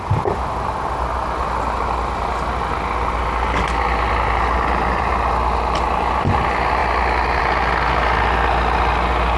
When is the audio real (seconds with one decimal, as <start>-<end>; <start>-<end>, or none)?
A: 0.0-9.4

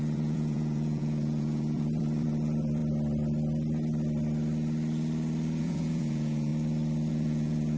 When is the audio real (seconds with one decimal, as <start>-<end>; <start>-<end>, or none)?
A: 2.8-5.6; 6.5-7.1